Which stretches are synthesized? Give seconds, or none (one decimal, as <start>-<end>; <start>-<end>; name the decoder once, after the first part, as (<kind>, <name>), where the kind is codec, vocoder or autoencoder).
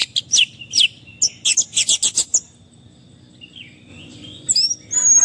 3.9-4.5 (vocoder, Vocos)